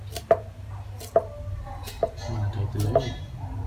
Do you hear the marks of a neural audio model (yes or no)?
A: no